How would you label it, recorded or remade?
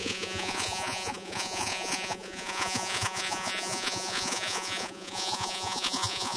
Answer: remade